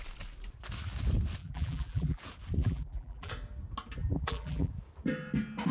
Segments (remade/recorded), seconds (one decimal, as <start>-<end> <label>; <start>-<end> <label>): 0.0-1.4 recorded; 1.4-2.2 remade; 2.2-2.6 recorded; 2.6-3.3 remade; 3.3-4.0 recorded; 4.0-4.7 remade; 4.7-5.7 recorded